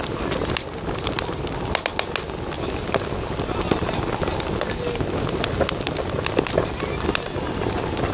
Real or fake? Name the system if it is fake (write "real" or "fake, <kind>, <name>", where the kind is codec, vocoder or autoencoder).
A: real